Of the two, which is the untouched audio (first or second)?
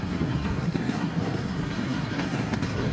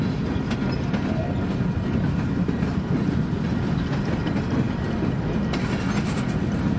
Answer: second